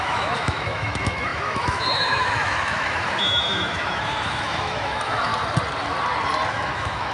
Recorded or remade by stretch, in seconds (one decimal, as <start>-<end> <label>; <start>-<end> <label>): 0.0-5.3 remade; 5.3-6.5 recorded; 6.5-7.1 remade